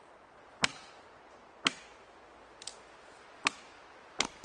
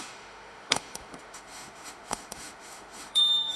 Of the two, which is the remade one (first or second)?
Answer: second